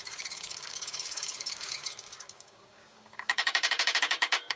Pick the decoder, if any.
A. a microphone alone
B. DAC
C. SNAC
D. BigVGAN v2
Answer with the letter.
B